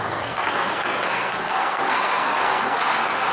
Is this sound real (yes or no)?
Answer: no